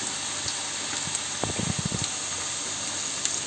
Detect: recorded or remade recorded